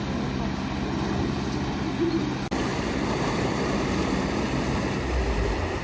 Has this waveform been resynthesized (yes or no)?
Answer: no